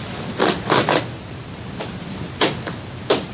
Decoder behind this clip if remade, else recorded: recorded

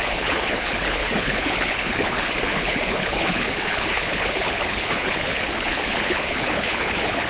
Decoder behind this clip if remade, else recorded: remade, codec, HILCodec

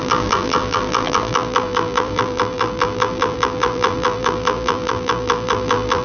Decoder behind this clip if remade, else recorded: remade, vocoder, BigVGAN v2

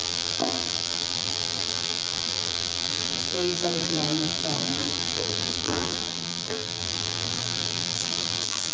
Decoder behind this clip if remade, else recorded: remade, vocoder, BigVGAN v2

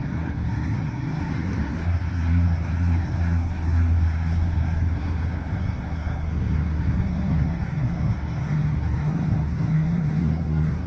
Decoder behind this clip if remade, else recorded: remade, codec, SNAC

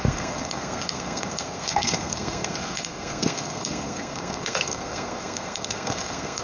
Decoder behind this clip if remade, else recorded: remade, codec, SNAC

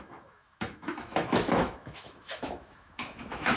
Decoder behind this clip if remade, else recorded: remade, autoencoder, DAC-VAE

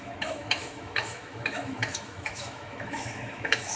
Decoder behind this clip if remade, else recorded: remade, autoencoder, DAC-VAE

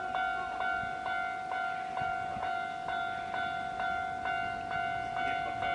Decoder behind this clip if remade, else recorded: recorded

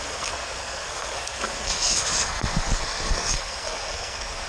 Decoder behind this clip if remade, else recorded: remade, codec, SNAC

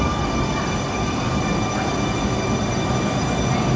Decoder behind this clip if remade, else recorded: recorded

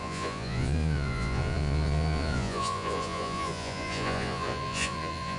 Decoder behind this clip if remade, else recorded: remade, vocoder, Vocos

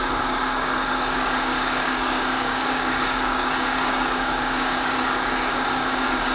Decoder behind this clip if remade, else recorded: remade, codec, DAC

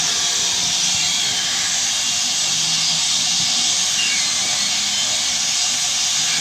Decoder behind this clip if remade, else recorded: recorded